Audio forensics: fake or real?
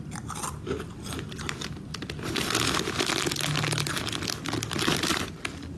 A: real